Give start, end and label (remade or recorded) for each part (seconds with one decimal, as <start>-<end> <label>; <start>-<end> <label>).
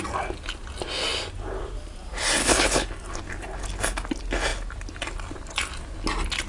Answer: 0.0-2.4 recorded; 2.4-2.9 remade; 2.9-6.5 recorded